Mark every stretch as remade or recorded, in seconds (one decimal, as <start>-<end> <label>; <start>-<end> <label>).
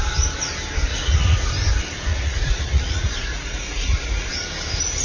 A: 0.0-0.9 recorded; 0.9-1.5 remade; 1.5-2.1 recorded; 2.1-4.3 remade; 4.3-5.0 recorded